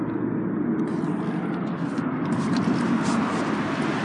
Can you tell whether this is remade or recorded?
recorded